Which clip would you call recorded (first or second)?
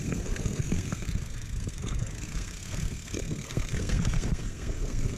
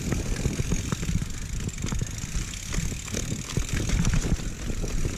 second